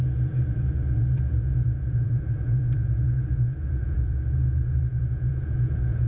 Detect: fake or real fake